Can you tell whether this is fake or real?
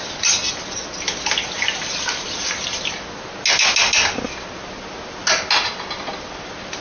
real